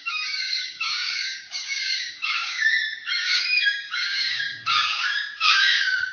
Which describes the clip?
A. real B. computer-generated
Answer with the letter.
B